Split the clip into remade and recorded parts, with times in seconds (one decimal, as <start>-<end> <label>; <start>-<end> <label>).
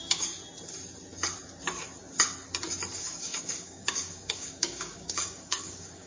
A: 0.0-0.4 remade; 0.4-2.9 recorded; 2.9-6.1 remade